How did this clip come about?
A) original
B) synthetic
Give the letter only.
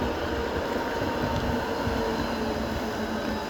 A